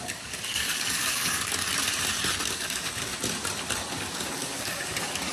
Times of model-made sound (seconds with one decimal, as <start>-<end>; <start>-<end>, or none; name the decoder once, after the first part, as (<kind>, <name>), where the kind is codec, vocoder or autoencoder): 0.0-1.7 (codec, DAC); 2.5-3.1; 4.0-5.3